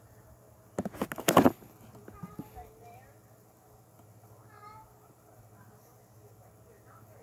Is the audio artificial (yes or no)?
no